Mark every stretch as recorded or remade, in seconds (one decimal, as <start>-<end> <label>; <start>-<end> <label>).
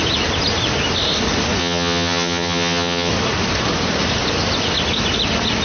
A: 0.0-1.6 recorded; 1.6-3.1 remade; 3.1-5.6 recorded